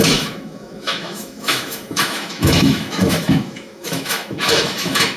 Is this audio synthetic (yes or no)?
yes